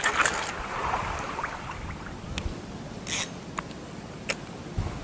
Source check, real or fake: real